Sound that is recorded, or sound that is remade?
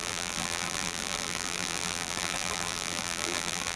remade